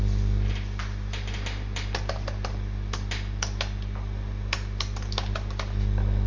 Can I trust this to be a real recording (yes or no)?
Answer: yes